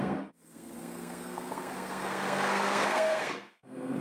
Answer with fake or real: fake